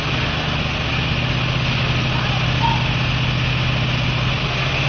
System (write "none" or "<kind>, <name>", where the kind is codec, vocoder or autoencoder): none